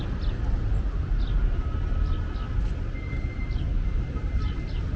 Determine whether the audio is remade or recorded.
recorded